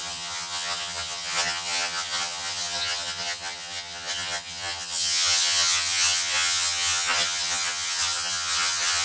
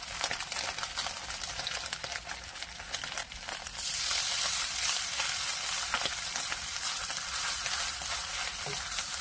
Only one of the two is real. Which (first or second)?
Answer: second